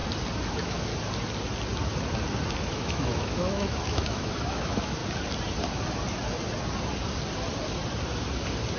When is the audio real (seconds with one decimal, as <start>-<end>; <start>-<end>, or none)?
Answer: 0.0-0.5; 0.9-2.7; 5.0-8.8